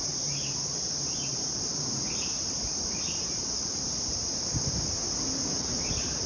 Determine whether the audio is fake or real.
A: fake